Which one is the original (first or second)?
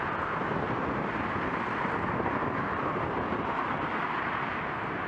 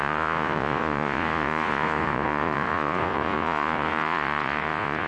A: first